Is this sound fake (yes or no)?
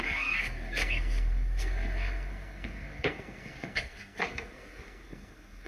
yes